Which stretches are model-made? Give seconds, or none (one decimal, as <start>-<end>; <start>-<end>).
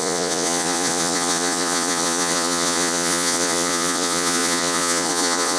0.0-5.6